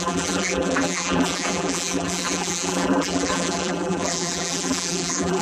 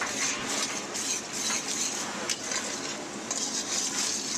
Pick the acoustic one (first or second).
second